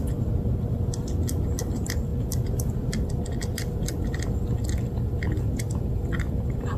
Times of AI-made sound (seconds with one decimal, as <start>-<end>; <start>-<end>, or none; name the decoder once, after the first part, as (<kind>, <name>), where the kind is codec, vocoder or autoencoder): none